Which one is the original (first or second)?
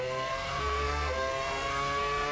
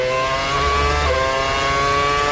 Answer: second